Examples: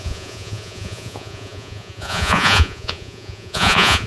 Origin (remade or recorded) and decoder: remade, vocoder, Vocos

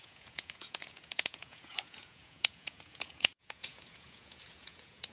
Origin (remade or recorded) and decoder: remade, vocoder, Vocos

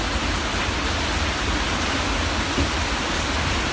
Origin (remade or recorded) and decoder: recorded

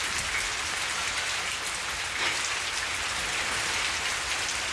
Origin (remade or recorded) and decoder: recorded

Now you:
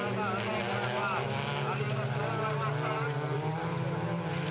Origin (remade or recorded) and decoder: recorded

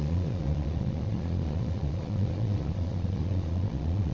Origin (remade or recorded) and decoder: remade, vocoder, Vocos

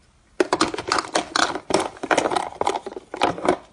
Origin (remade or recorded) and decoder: recorded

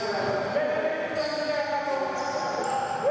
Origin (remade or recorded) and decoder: recorded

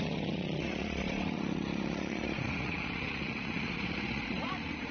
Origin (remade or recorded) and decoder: remade, vocoder, Vocos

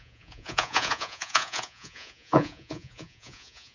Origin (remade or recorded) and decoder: remade, vocoder, Vocos